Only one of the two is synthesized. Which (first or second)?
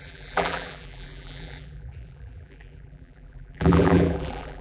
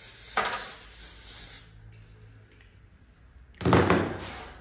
first